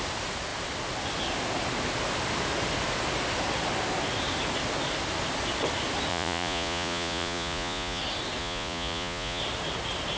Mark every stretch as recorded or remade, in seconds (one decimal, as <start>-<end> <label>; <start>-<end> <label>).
0.0-6.1 recorded; 6.1-8.0 remade; 8.0-8.4 recorded; 8.4-9.4 remade; 9.4-10.2 recorded